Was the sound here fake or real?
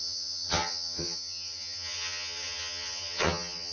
fake